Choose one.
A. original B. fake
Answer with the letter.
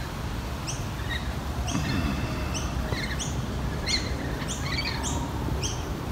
A